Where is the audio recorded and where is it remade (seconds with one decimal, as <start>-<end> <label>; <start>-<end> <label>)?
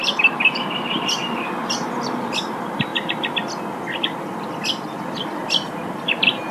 0.0-2.9 recorded; 2.9-3.6 remade; 3.6-6.5 recorded